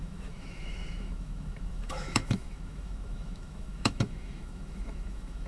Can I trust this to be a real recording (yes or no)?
no